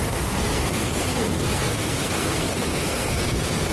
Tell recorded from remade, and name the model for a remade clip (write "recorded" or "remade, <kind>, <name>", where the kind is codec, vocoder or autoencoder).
remade, codec, SNAC